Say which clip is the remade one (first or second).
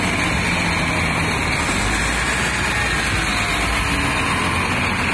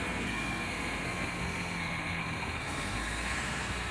second